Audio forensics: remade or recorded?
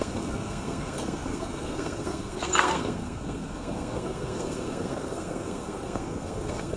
remade